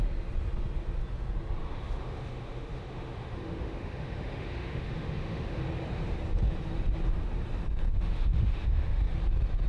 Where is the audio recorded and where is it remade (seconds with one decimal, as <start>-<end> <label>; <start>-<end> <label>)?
0.0-1.6 recorded; 1.6-5.6 remade; 5.6-7.9 recorded; 7.9-9.0 remade; 9.0-9.7 recorded